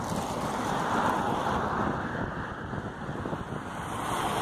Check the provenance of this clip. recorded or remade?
recorded